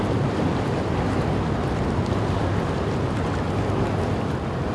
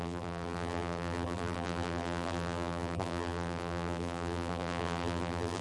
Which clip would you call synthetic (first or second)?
second